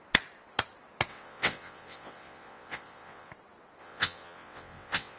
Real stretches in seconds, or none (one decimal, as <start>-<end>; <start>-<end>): 0.0-1.1; 3.3-3.8